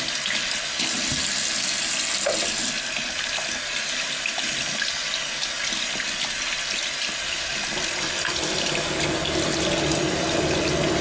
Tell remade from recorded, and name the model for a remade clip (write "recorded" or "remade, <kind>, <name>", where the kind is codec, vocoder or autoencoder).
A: recorded